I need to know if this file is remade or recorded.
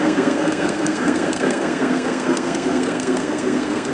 remade